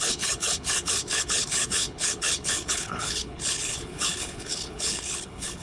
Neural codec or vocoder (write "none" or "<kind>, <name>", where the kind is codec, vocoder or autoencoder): codec, HILCodec